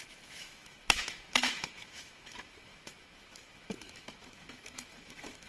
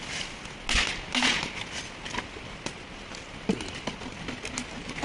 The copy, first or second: first